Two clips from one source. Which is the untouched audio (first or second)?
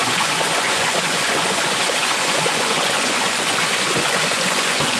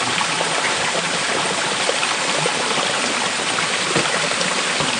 second